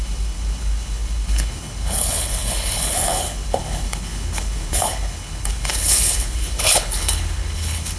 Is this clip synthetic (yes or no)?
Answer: yes